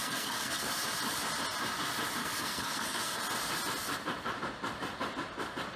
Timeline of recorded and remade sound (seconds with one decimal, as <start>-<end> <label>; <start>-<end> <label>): 0.0-0.7 remade; 0.7-2.2 recorded; 2.2-3.2 remade; 3.2-5.8 recorded